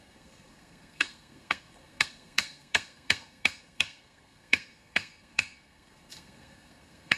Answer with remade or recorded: remade